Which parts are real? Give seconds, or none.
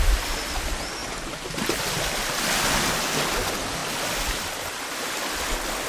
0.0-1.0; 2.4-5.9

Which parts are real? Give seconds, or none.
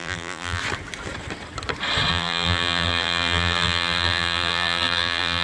0.6-2.1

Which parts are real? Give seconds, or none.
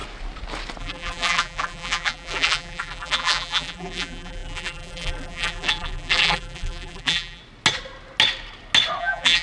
0.0-0.8; 7.4-9.0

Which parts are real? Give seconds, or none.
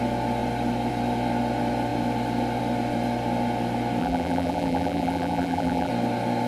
0.0-4.0; 5.9-6.5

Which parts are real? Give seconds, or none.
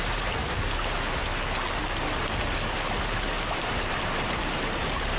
1.3-3.5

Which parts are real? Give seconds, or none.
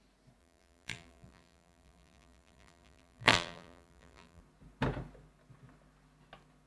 0.0-0.4; 4.4-6.7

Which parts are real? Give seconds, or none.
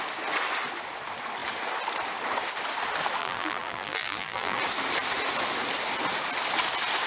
0.0-3.2; 4.6-7.1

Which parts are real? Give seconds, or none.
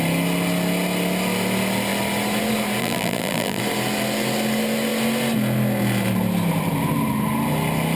0.0-2.8; 3.6-8.0